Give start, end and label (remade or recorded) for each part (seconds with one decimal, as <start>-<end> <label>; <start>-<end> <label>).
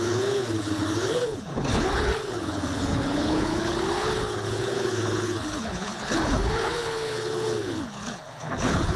0.0-9.0 remade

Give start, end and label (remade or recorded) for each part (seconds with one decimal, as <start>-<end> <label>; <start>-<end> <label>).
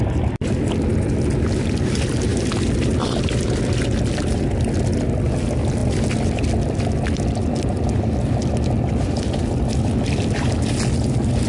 0.0-11.5 recorded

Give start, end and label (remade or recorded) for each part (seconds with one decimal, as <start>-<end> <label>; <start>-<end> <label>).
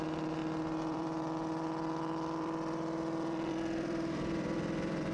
0.0-5.1 remade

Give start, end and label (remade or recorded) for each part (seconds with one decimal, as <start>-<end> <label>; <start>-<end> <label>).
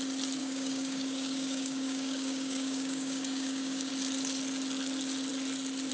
0.0-0.4 recorded; 0.4-3.9 remade; 3.9-5.9 recorded